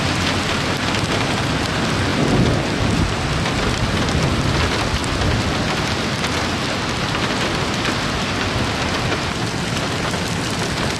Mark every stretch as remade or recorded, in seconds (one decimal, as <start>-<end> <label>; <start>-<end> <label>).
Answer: 0.0-11.0 recorded